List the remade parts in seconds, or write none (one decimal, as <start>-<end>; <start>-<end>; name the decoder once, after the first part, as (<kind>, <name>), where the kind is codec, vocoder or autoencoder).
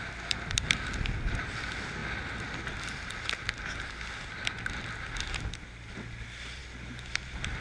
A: none